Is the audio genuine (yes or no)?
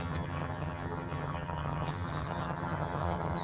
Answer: no